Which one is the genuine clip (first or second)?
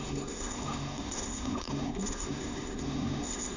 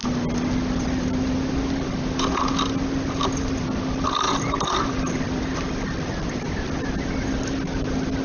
second